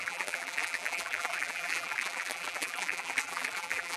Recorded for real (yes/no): no